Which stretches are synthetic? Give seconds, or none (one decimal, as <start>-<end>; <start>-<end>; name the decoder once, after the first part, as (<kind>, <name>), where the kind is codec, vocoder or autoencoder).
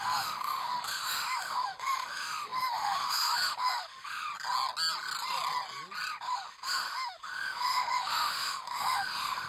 0.0-4.3 (autoencoder, DAC-VAE); 6.1-9.5